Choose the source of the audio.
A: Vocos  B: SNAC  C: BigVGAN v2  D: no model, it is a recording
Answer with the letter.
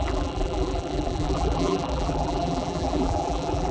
C